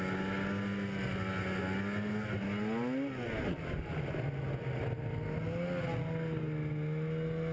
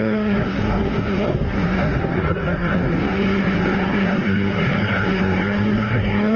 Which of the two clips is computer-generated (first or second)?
second